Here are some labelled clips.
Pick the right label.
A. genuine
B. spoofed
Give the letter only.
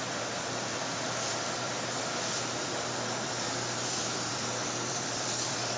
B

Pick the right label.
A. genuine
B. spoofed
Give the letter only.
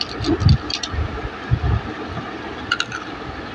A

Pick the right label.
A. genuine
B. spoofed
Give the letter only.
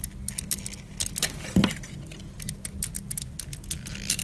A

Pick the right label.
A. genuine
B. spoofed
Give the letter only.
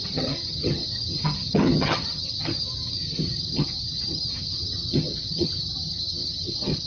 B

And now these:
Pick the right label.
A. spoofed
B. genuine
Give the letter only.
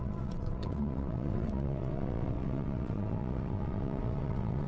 A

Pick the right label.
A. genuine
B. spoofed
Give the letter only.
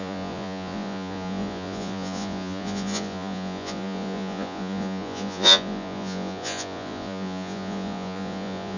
B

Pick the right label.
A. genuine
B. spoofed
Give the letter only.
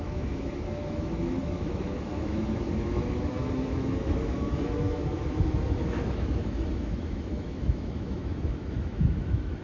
B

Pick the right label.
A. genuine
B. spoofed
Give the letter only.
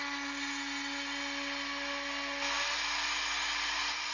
A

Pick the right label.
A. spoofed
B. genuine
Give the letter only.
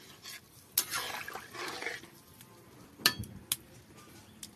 B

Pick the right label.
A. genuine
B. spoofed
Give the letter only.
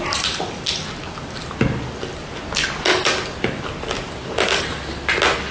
A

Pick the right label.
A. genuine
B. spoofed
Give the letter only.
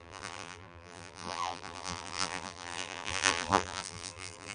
B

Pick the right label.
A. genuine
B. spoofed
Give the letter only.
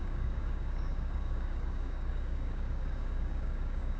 B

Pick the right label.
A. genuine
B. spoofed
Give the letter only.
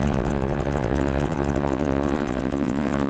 B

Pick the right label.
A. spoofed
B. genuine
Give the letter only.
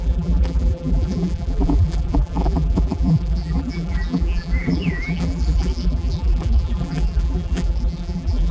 A